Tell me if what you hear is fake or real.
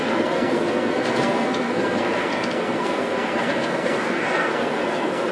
fake